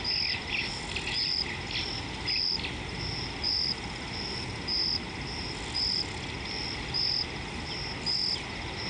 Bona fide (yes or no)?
yes